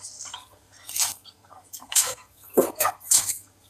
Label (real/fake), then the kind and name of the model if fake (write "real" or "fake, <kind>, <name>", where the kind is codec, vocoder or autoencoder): fake, codec, SNAC